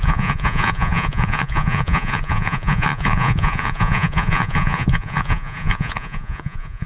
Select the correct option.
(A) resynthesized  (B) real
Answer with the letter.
A